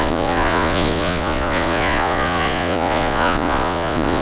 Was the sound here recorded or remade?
remade